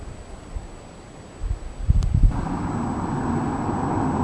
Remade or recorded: recorded